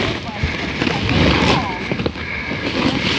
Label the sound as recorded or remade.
recorded